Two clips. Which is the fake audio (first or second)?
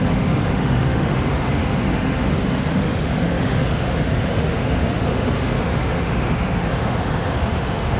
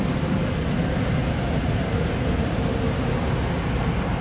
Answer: first